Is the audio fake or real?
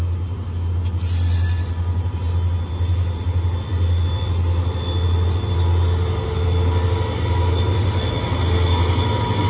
real